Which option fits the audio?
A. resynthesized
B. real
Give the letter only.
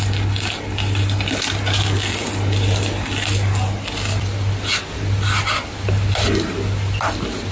B